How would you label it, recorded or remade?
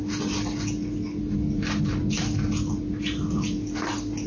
recorded